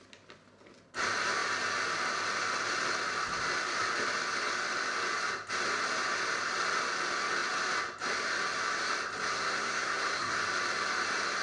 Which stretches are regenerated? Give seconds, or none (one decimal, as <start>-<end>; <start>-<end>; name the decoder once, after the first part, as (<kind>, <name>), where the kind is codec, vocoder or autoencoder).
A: 9.3-10.4 (codec, SNAC)